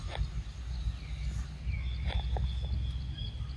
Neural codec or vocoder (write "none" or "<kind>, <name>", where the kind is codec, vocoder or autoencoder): none